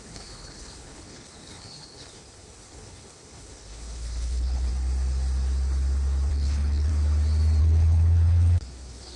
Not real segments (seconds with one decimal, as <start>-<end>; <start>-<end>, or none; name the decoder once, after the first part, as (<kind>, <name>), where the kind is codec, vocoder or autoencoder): 0.0-4.7 (codec, HILCodec); 6.3-6.9; 7.6-9.2